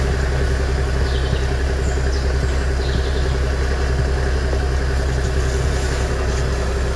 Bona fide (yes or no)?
yes